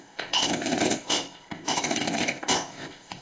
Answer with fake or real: fake